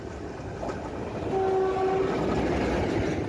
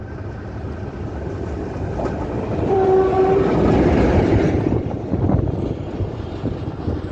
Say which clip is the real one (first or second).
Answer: first